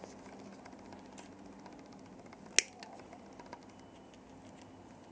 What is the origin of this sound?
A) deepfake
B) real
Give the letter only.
B